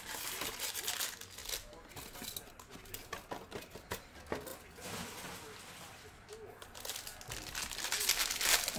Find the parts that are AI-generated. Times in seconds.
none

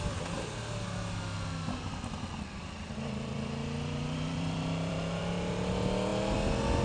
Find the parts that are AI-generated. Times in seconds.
1.8-5.2 (vocoder, BigVGAN v2)

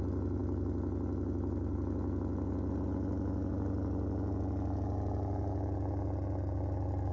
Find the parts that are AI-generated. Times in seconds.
none